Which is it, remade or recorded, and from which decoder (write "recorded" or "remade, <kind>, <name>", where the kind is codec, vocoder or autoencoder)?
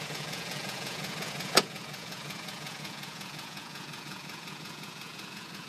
remade, vocoder, Vocos